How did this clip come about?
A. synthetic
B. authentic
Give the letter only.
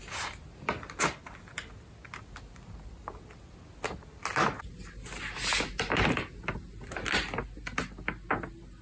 B